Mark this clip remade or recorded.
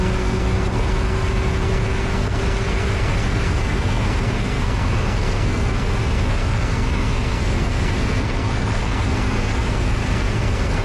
remade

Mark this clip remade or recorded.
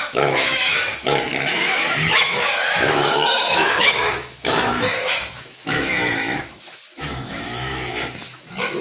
remade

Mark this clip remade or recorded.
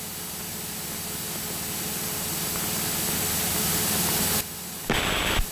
recorded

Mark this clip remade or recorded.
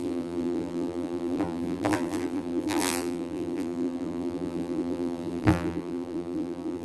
remade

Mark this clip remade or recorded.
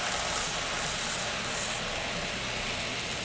recorded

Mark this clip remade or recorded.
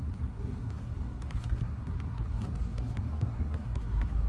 remade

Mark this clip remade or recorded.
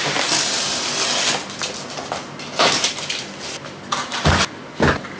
recorded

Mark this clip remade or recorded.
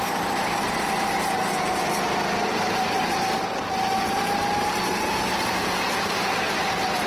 recorded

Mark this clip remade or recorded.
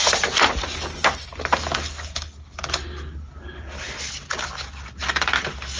recorded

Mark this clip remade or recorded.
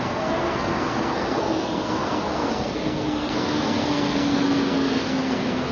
remade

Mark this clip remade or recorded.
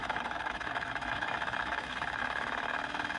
remade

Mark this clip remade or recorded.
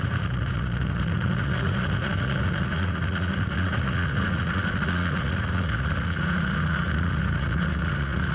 remade